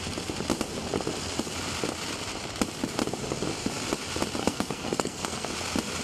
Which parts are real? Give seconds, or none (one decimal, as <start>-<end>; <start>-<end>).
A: 0.0-4.4; 5.5-6.0